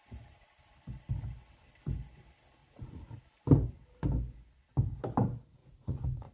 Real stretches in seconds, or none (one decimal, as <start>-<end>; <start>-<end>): 0.0-2.6; 3.2-5.6